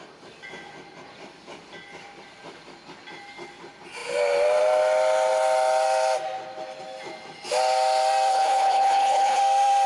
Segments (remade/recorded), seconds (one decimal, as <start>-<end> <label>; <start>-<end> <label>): 0.0-8.3 recorded; 8.3-9.4 remade; 9.4-9.9 recorded